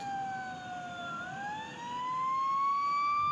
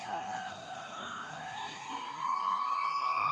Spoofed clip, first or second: second